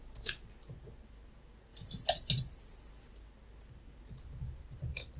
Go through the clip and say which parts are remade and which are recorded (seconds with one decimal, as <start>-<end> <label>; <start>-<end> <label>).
0.0-5.2 recorded